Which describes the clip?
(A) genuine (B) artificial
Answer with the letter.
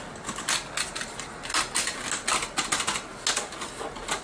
A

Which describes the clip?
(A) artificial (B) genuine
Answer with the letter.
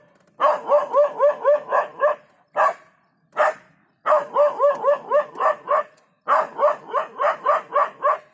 B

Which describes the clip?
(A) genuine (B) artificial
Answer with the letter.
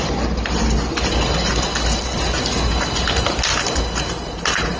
A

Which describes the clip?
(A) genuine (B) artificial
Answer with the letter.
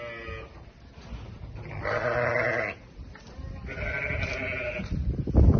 A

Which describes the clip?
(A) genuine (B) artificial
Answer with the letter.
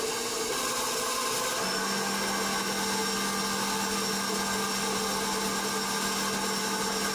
A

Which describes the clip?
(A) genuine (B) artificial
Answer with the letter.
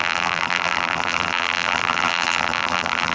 B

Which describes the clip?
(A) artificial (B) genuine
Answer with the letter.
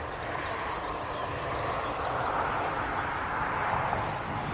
B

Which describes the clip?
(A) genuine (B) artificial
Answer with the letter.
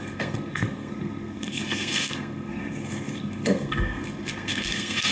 B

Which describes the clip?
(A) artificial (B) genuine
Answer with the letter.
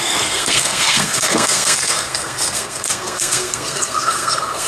A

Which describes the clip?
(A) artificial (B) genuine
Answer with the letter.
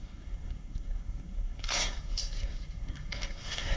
A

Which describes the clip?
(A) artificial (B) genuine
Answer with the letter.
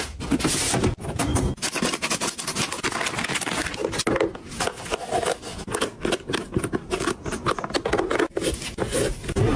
B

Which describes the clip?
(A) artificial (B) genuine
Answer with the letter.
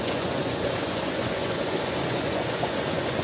A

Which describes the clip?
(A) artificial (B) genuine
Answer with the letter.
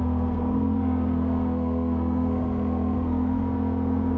A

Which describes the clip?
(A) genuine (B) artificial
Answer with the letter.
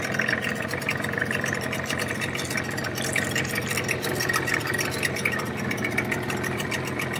A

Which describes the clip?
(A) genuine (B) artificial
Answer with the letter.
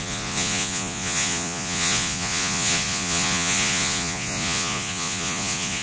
B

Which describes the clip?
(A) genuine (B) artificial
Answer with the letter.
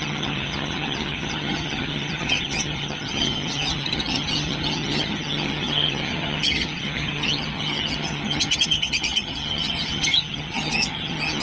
B